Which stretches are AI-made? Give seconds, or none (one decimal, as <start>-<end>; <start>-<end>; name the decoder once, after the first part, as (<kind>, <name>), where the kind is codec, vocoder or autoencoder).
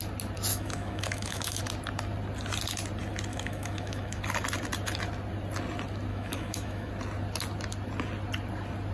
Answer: 0.5-1.6 (autoencoder, DAC-VAE); 3.3-4.2; 6.1-6.9